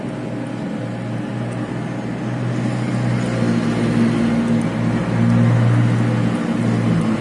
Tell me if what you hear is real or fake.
real